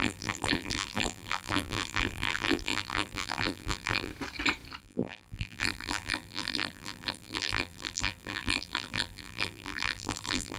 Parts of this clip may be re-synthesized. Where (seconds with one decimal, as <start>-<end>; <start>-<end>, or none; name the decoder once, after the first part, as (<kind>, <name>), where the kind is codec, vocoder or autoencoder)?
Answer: 0.0-4.1 (vocoder, BigVGAN v2); 4.8-10.6